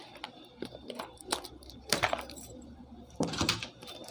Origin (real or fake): fake